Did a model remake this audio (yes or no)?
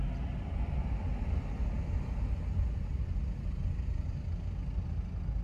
no